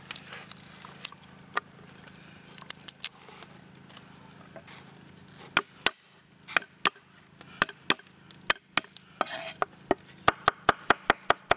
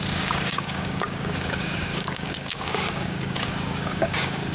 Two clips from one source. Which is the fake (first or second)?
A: second